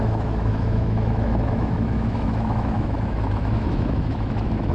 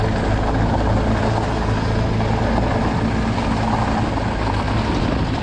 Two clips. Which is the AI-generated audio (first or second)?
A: first